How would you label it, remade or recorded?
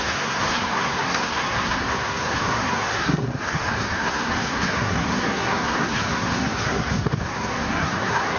remade